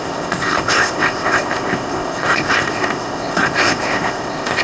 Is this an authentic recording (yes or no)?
no